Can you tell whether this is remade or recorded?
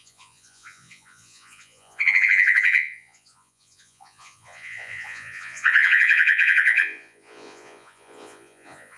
remade